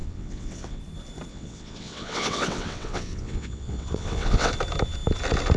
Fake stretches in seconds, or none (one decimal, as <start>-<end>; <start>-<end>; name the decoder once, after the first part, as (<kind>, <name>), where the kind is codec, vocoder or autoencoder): 0.0-0.8 (vocoder, WaveNeXt); 1.3-4.5